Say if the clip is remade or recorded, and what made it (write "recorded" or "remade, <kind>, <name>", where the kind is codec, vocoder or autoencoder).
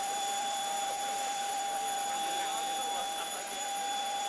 remade, vocoder, BigVGAN v2